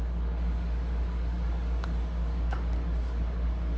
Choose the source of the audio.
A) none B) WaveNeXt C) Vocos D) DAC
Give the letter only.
D